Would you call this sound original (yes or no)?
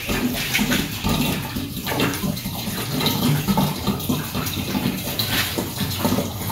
yes